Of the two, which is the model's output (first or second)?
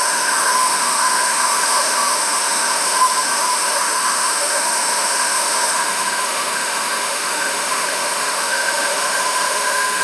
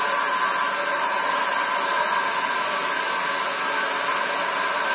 first